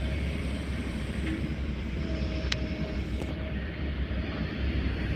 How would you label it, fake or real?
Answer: fake